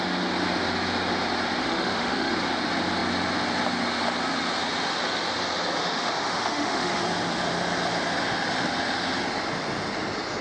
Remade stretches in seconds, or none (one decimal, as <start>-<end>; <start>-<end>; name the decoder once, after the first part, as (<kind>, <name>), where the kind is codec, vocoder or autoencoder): 1.6-2.3 (autoencoder, DAC-VAE); 5.8-7.0